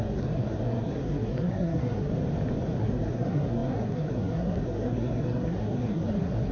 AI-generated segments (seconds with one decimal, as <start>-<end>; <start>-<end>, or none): 0.0-2.1; 2.8-6.5